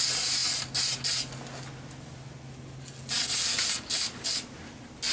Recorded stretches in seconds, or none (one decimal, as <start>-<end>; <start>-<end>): 0.0-5.1